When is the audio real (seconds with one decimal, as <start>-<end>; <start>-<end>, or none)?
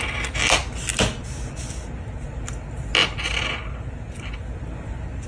0.0-5.3